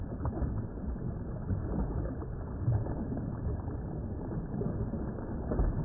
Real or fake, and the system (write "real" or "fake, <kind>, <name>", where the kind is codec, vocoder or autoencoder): real